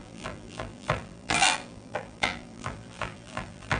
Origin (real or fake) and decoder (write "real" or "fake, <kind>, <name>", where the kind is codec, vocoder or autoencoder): fake, vocoder, BigVGAN v2